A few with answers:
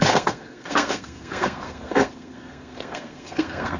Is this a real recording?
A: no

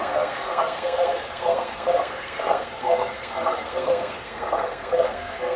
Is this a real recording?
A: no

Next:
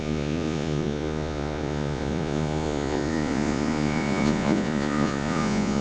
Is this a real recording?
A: no